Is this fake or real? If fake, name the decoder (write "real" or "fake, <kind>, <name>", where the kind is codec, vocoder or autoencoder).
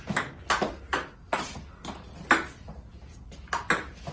real